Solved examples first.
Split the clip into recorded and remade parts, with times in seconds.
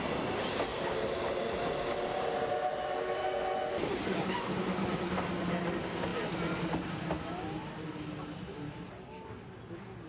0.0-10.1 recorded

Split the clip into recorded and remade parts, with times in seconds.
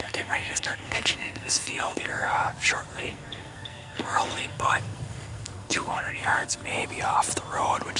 0.0-2.3 remade; 2.3-2.9 recorded; 2.9-6.7 remade; 6.7-8.0 recorded